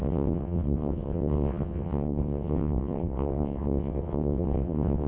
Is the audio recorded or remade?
remade